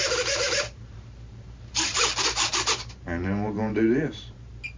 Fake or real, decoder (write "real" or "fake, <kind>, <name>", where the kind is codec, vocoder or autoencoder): fake, vocoder, BigVGAN v2